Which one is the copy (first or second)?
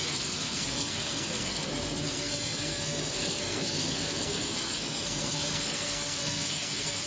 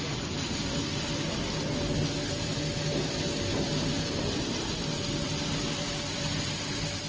first